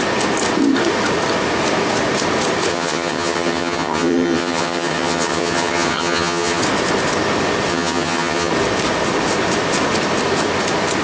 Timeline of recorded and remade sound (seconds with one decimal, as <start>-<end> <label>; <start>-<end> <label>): 0.0-2.7 recorded; 2.7-6.6 remade; 6.6-7.7 recorded; 7.7-8.5 remade; 8.5-11.0 recorded